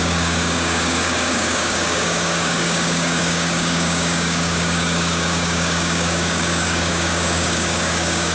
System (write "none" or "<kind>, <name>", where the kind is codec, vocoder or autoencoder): codec, DAC